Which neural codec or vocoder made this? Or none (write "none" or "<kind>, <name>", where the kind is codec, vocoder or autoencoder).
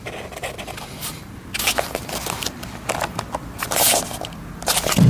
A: none